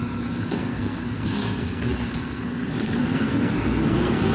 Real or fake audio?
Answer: fake